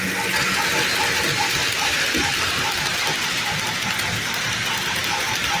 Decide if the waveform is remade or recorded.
recorded